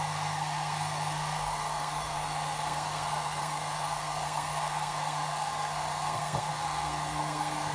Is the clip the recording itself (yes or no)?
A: no